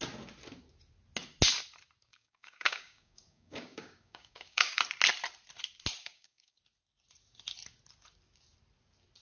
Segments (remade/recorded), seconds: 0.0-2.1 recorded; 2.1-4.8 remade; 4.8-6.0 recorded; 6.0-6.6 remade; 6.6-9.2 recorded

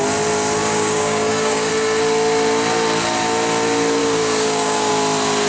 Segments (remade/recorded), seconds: 0.0-0.6 recorded; 0.6-1.7 remade; 1.7-4.0 recorded; 4.0-4.9 remade; 4.9-5.5 recorded

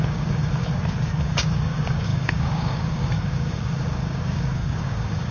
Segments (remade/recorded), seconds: 0.0-0.6 remade; 0.6-1.2 recorded; 1.2-5.3 remade

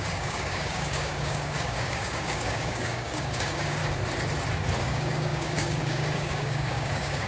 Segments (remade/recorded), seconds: 0.0-3.8 remade; 3.8-4.8 recorded; 4.8-7.3 remade

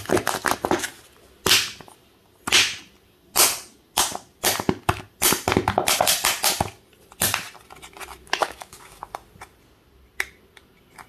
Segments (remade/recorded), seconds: 0.0-8.4 recorded; 8.4-9.0 remade; 9.0-11.1 recorded

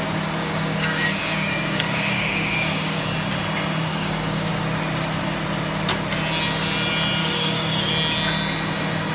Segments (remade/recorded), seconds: 0.0-0.4 recorded; 0.4-3.0 remade; 3.0-3.9 recorded; 3.9-4.5 remade; 4.5-7.2 recorded; 7.2-7.9 remade; 7.9-9.1 recorded